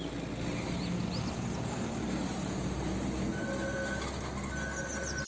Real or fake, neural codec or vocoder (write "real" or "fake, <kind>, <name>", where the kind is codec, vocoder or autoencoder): real